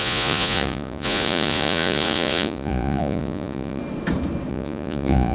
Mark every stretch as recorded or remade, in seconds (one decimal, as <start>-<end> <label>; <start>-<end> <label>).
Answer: 0.0-3.8 remade; 3.8-4.5 recorded; 4.5-5.3 remade